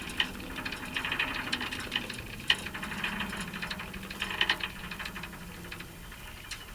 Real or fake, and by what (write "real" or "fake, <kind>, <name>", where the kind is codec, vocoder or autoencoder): real